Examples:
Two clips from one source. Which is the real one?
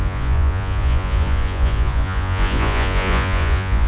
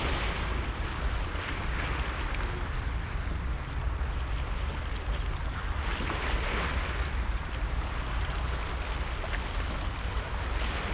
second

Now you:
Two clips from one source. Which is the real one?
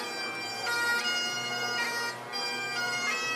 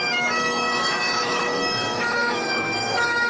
first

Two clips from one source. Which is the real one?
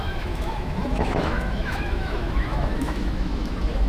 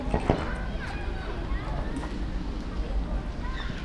second